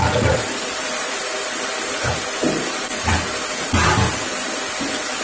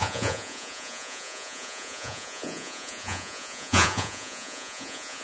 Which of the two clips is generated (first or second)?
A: second